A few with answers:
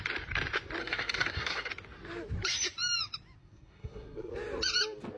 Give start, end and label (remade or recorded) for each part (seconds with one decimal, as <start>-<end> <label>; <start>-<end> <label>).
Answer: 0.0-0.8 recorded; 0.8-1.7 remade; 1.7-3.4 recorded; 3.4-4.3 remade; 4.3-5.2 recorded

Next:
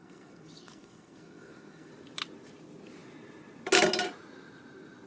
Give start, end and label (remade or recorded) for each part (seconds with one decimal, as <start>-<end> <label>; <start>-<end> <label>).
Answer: 0.0-1.9 remade; 1.9-5.1 recorded

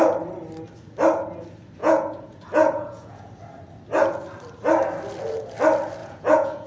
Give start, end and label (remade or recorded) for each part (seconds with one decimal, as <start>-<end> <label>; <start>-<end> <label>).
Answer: 0.0-1.8 recorded; 1.8-3.3 remade; 3.3-6.0 recorded; 6.0-6.7 remade

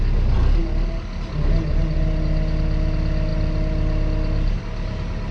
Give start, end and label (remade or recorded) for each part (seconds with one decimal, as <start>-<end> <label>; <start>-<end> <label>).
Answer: 0.0-5.3 recorded

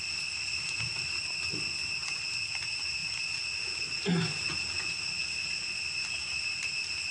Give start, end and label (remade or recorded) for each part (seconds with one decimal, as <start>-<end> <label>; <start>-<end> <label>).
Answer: 0.0-7.1 recorded

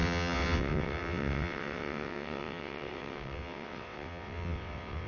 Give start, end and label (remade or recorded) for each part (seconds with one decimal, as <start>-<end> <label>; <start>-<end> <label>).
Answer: 0.0-5.1 remade